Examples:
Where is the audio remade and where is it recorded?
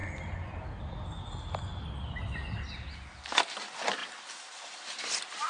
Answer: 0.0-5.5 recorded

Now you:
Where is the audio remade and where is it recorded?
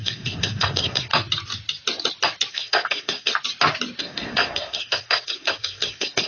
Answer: 0.0-1.1 remade; 1.1-2.5 recorded; 2.5-3.3 remade; 3.3-4.0 recorded; 4.0-6.3 remade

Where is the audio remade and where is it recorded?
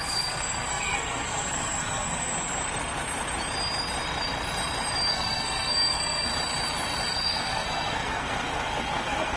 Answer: 0.0-2.3 remade; 2.3-5.1 recorded; 5.1-6.3 remade; 6.3-7.1 recorded; 7.1-9.4 remade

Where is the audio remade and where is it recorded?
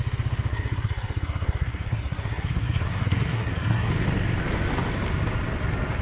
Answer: 0.0-0.5 recorded; 0.5-3.9 remade; 3.9-6.0 recorded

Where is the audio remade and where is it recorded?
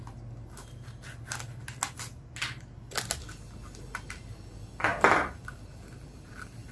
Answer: 0.0-6.7 recorded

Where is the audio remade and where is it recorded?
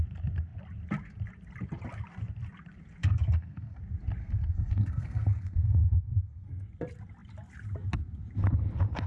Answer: 0.0-3.0 recorded; 3.0-3.8 remade; 3.8-4.2 recorded; 4.2-6.5 remade; 6.5-9.1 recorded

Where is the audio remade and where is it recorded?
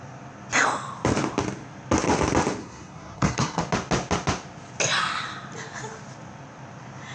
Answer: 0.0-2.6 recorded; 2.6-3.6 remade; 3.6-7.1 recorded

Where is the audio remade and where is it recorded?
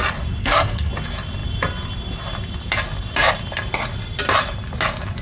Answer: 0.0-0.4 recorded; 0.4-0.9 remade; 0.9-5.2 recorded